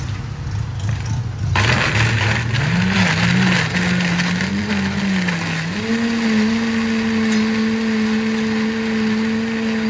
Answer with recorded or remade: recorded